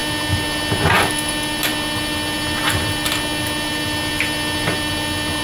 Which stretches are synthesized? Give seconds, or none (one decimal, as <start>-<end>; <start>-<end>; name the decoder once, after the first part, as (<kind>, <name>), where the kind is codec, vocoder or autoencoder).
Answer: none